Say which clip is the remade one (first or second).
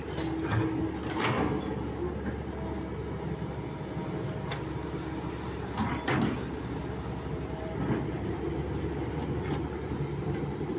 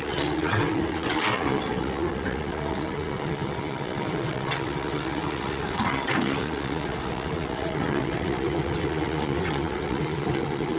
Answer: second